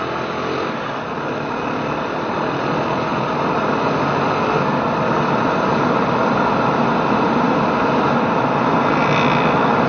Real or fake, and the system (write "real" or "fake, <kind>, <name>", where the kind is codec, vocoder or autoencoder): real